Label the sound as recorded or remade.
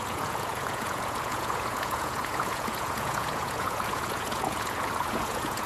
remade